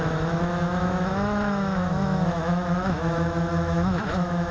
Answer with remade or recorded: remade